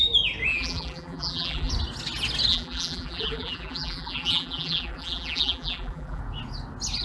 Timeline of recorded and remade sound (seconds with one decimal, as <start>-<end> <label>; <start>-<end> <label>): 0.0-0.5 recorded; 0.5-1.7 remade; 1.7-2.5 recorded; 2.5-6.2 remade; 6.2-7.0 recorded